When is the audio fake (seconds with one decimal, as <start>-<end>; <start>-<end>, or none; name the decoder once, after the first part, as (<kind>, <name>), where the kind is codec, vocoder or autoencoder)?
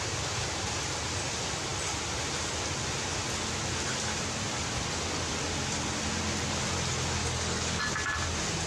7.2-7.8 (codec, DAC)